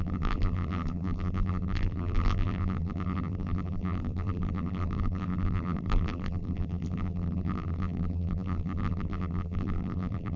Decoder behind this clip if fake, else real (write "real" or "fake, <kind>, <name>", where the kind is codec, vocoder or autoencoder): fake, vocoder, BigVGAN v2